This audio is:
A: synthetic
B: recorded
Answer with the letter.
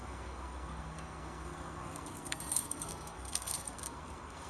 A